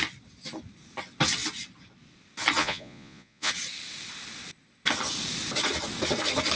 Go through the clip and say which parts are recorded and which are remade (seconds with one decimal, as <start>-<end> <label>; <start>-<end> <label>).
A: 0.0-2.6 recorded; 2.6-3.5 remade; 3.5-6.6 recorded